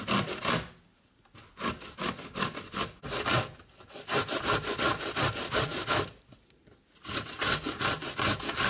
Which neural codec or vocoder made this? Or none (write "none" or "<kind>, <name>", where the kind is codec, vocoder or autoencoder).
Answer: none